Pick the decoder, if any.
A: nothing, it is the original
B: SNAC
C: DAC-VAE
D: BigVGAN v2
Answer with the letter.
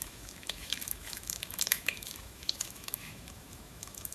C